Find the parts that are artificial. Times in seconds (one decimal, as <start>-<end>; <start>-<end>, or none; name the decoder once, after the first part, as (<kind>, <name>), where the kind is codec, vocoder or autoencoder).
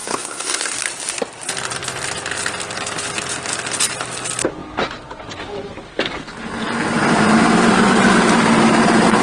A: 0.0-0.7 (codec, SNAC)